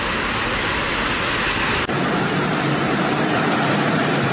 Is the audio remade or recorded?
recorded